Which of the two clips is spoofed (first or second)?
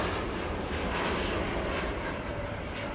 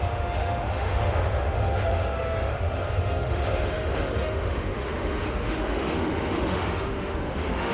second